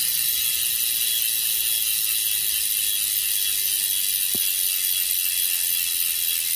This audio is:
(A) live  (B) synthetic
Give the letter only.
A